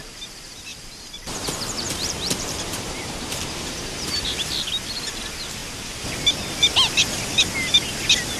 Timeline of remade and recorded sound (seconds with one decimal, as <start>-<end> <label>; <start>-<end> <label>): 0.0-0.7 recorded; 0.7-4.4 remade; 4.4-8.4 recorded